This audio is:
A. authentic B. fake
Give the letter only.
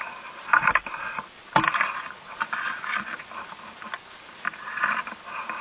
A